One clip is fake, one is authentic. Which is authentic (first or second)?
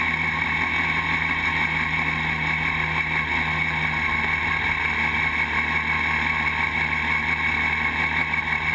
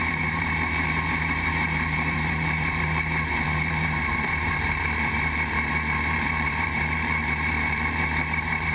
first